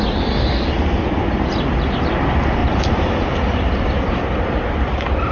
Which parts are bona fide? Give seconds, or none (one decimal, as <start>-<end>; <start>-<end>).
none